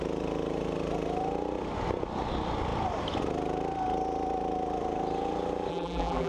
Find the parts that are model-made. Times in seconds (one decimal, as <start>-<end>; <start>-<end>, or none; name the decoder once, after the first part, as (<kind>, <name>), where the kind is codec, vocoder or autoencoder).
5.7-6.3 (vocoder, BigVGAN v2)